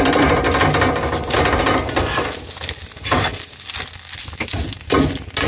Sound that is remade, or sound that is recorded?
recorded